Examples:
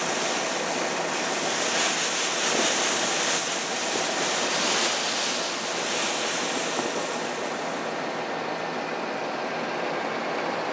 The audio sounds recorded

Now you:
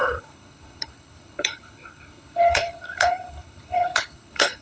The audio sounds remade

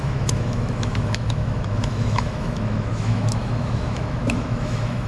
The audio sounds remade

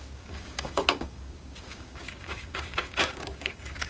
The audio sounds remade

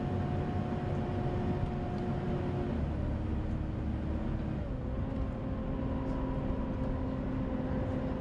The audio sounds recorded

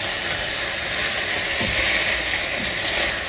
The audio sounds recorded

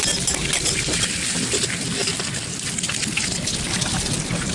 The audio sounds recorded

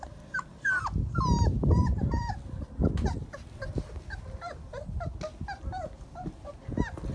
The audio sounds recorded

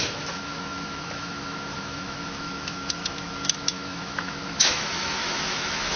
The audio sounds remade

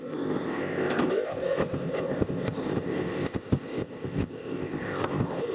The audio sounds remade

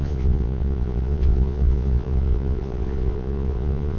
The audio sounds remade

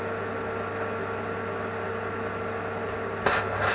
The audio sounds recorded